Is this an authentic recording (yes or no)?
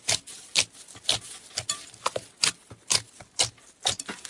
yes